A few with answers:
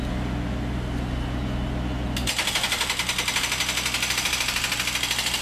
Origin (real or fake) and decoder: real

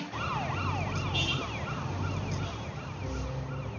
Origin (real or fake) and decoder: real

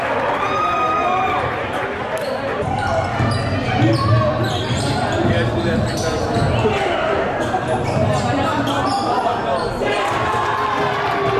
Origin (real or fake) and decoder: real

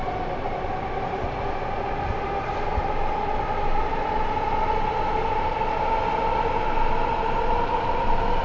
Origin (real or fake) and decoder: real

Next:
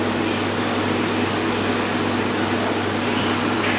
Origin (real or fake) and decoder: real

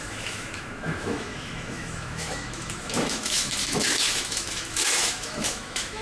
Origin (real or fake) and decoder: fake, autoencoder, DAC-VAE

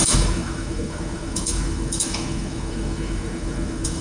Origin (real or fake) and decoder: fake, autoencoder, DAC-VAE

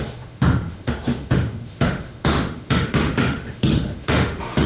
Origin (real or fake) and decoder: fake, autoencoder, DAC-VAE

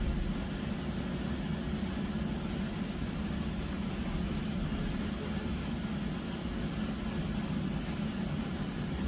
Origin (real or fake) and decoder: real